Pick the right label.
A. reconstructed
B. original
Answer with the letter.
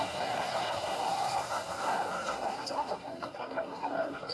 A